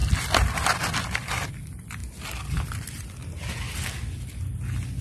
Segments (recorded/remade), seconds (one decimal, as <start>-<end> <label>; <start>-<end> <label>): 0.0-5.0 recorded